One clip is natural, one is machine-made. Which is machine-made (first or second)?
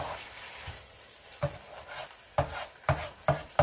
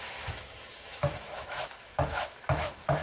second